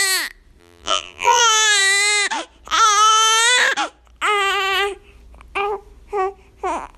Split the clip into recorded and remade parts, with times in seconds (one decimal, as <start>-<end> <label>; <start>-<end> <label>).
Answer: 0.0-0.6 recorded; 0.6-1.4 remade; 1.4-7.0 recorded